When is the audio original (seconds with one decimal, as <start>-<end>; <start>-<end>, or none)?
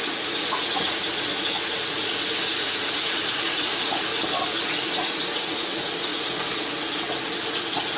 4.1-4.6; 6.1-7.6